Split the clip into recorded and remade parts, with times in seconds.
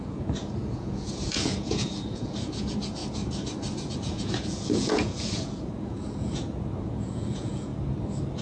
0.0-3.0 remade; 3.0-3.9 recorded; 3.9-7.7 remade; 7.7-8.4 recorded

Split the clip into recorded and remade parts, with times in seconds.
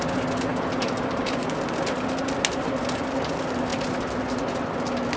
0.0-5.2 recorded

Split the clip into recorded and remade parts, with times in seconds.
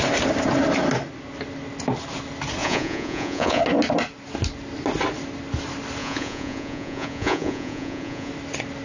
0.0-2.6 recorded; 2.6-3.6 remade; 3.6-6.0 recorded; 6.0-8.3 remade; 8.3-8.8 recorded